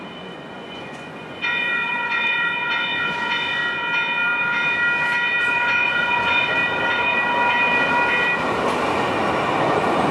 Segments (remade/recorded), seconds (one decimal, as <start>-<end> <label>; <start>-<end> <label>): 0.0-3.6 remade; 3.6-5.4 recorded; 5.4-6.6 remade; 6.6-9.6 recorded; 9.6-10.1 remade